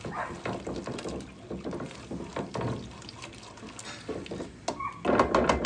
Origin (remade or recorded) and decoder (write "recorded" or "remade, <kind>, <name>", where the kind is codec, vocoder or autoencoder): recorded